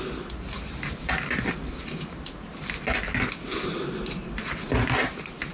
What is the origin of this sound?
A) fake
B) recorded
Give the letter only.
B